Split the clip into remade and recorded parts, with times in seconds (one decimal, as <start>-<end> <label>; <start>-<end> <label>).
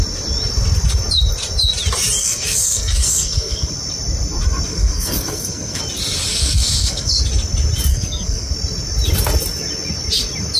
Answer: 0.0-2.2 recorded; 2.2-3.7 remade; 3.7-4.7 recorded; 4.7-5.8 remade; 5.8-6.3 recorded; 6.3-7.1 remade; 7.1-7.9 recorded; 7.9-8.5 remade; 8.5-10.6 recorded